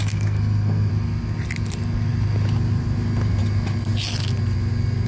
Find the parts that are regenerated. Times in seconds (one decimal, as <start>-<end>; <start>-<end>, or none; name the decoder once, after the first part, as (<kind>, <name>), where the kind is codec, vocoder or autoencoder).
0.0-0.9 (codec, SNAC)